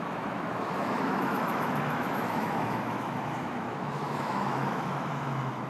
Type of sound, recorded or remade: remade